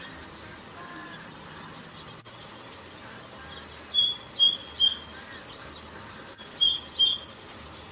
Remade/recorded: recorded